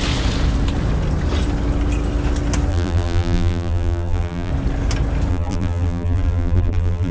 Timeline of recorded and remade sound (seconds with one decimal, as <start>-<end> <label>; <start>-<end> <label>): 0.0-2.7 recorded; 2.7-4.5 remade; 4.5-5.3 recorded; 5.3-7.1 remade